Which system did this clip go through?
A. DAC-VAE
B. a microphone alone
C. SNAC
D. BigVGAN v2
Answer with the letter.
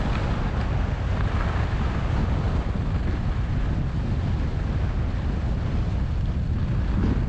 B